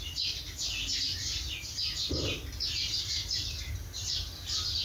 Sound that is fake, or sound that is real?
real